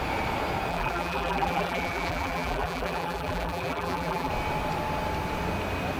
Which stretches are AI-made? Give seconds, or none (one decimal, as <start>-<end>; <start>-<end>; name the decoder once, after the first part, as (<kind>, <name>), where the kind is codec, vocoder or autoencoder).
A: 0.7-4.3 (vocoder, BigVGAN v2)